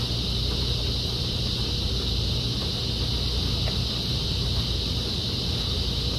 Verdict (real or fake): real